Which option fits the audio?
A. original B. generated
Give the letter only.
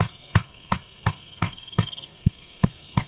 B